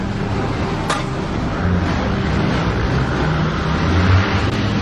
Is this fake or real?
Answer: real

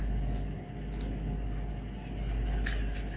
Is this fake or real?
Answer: real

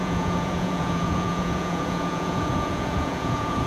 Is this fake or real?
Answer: fake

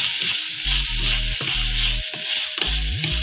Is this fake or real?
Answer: real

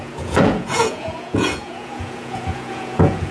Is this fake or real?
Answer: fake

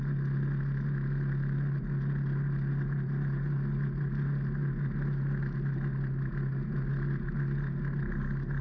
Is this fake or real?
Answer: real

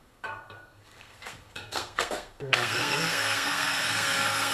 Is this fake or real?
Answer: fake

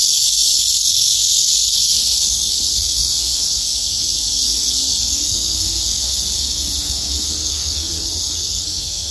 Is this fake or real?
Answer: fake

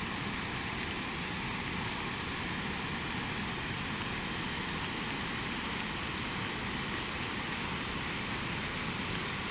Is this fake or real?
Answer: real